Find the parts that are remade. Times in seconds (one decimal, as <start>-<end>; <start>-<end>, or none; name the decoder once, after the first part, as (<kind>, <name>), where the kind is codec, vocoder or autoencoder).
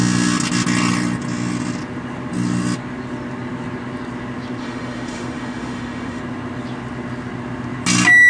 4.6-6.2 (autoencoder, DAC-VAE)